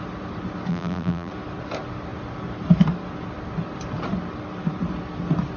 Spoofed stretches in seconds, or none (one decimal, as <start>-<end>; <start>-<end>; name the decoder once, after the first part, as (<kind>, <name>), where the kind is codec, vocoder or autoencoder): 0.7-1.3 (vocoder, BigVGAN v2)